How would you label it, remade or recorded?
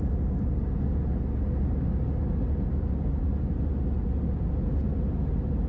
recorded